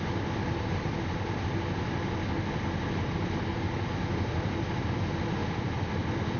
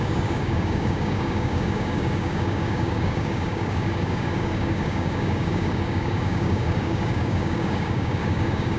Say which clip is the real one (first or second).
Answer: first